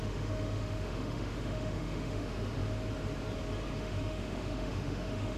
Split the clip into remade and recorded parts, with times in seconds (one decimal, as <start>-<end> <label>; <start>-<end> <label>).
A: 0.0-2.6 remade; 2.6-3.8 recorded; 3.8-5.4 remade